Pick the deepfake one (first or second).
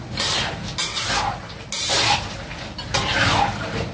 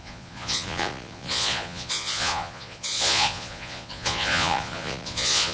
second